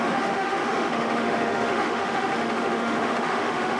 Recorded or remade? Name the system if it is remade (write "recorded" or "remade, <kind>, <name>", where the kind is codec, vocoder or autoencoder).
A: remade, autoencoder, DAC-VAE